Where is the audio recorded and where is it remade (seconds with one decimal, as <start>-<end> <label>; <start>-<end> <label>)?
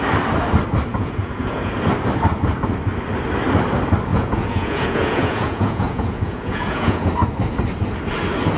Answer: 0.0-0.9 recorded; 0.9-1.7 remade; 1.7-4.1 recorded; 4.1-7.1 remade; 7.1-8.6 recorded